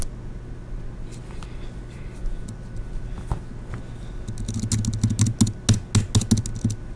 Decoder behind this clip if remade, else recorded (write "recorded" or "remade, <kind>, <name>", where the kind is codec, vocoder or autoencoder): recorded